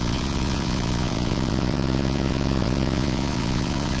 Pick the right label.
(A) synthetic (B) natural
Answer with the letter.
A